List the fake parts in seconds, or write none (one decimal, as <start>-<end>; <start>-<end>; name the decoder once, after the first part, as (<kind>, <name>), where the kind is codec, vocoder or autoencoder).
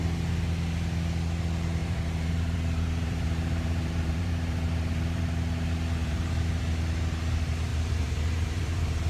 1.8-5.2 (vocoder, BigVGAN v2); 6.0-6.6; 7.7-9.1